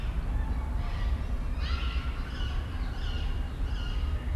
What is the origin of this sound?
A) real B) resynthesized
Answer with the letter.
A